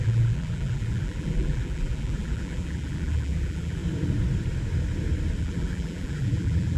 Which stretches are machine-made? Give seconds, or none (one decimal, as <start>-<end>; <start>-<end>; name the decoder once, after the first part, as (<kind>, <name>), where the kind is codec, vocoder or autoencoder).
0.0-3.8 (vocoder, BigVGAN v2); 5.4-6.8